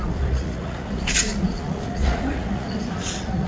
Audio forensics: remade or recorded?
remade